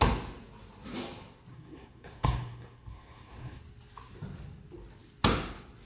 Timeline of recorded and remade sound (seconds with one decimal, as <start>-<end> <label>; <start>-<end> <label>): 0.0-1.5 recorded; 1.5-3.6 remade; 3.6-5.9 recorded